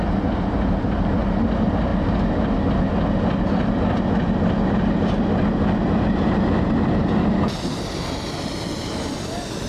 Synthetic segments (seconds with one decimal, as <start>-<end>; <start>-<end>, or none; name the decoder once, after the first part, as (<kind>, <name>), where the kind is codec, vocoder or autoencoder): none